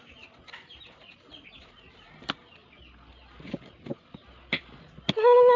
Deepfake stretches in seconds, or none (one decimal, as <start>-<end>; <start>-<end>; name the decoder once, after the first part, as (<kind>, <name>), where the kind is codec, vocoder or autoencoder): none